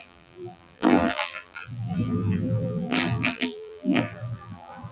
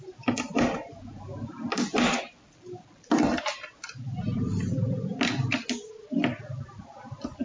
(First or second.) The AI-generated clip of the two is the first